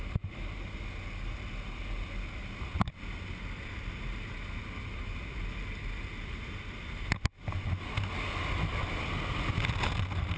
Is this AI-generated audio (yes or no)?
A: no